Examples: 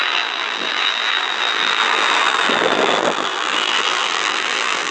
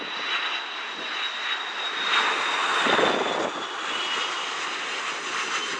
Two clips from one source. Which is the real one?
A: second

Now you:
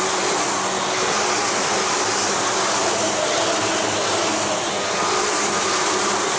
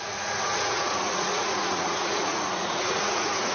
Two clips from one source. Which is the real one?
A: first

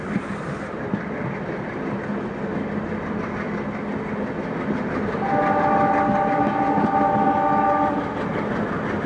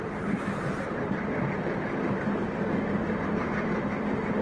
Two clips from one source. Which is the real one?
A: first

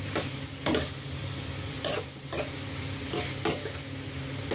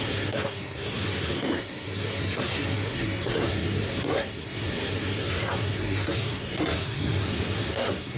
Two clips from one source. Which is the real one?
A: first